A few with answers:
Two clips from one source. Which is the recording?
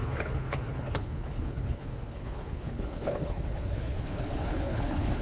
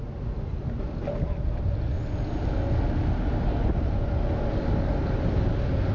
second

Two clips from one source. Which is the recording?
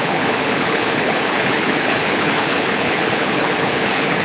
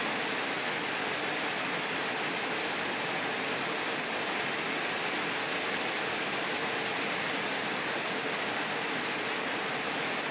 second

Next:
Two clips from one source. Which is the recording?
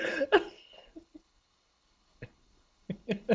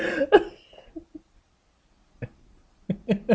second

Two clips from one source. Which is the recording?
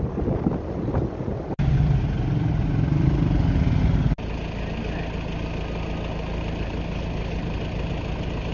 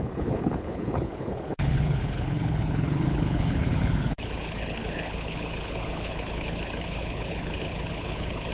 first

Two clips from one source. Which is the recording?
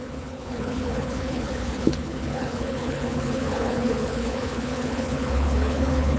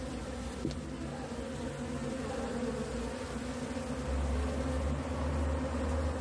second